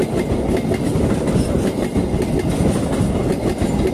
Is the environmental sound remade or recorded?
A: recorded